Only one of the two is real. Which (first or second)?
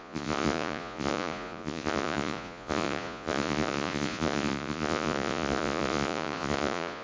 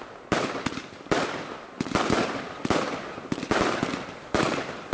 second